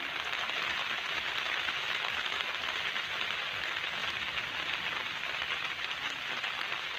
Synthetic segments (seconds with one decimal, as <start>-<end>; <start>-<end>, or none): 1.8-2.6